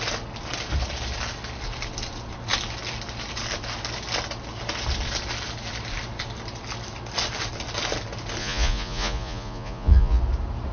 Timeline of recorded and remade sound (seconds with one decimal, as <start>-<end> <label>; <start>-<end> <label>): 0.0-8.4 recorded; 8.4-10.2 remade; 10.2-10.7 recorded